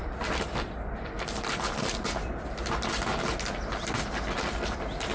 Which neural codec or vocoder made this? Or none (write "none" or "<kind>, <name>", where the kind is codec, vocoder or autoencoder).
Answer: none